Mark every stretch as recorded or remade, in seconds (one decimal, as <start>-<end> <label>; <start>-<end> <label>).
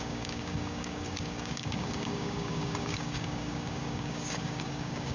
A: 0.0-5.1 remade